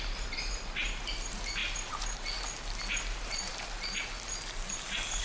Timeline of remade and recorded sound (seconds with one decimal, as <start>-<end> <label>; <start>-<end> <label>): 0.0-3.5 remade; 3.5-5.2 recorded